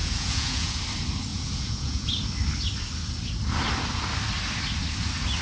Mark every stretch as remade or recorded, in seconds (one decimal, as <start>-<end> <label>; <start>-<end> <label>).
0.0-0.8 remade; 0.8-1.3 recorded; 1.3-2.1 remade; 2.1-5.4 recorded